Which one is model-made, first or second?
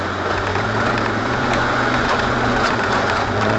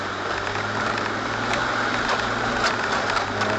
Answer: first